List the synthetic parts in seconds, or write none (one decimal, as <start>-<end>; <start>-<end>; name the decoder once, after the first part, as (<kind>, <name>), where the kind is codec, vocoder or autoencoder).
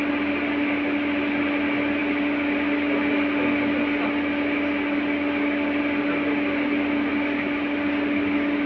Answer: none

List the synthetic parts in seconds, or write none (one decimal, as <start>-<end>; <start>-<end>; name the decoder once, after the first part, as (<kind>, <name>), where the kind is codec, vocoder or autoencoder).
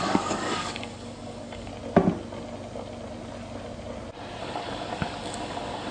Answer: 0.0-1.7 (codec, DAC); 4.4-5.9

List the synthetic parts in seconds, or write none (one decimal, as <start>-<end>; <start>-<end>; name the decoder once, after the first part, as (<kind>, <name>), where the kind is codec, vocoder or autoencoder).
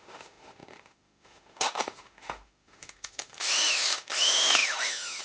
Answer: 0.0-5.2 (autoencoder, DAC-VAE)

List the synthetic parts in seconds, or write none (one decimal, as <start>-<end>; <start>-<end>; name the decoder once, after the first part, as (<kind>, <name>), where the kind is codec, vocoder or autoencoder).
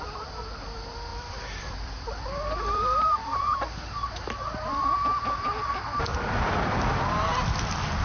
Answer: 1.1-3.6 (vocoder, BigVGAN v2); 6.1-6.8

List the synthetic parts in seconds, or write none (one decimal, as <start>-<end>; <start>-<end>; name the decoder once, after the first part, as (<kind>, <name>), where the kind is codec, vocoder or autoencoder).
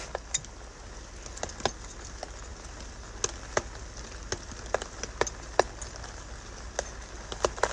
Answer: none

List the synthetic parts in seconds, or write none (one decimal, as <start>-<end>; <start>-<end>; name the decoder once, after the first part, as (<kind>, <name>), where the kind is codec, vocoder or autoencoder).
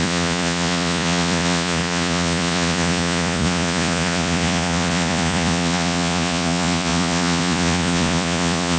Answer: 0.0-8.8 (vocoder, Vocos)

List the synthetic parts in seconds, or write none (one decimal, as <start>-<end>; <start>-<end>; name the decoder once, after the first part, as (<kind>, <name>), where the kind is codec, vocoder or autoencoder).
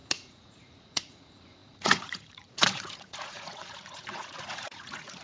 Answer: 0.0-5.2 (vocoder, Vocos)